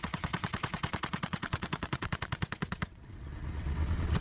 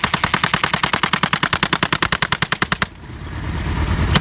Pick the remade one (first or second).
first